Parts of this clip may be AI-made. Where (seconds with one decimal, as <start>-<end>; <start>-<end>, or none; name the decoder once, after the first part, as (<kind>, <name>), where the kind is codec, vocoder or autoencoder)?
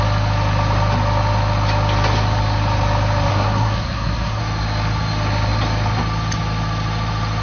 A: 3.3-4.4 (codec, SNAC)